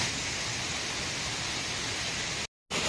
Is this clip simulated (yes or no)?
no